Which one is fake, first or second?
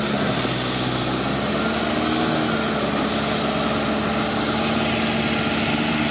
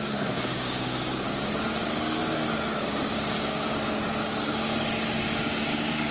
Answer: second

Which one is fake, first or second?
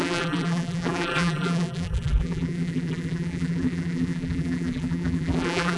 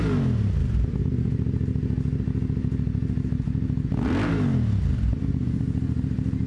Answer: first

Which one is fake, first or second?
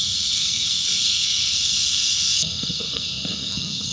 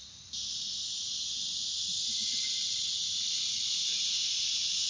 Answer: first